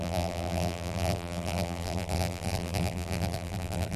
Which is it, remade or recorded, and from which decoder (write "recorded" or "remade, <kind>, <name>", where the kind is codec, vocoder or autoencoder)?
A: remade, vocoder, BigVGAN v2